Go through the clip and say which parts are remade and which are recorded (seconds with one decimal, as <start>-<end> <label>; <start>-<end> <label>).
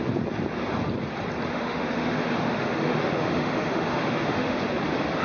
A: 0.0-1.5 recorded; 1.5-4.6 remade; 4.6-5.2 recorded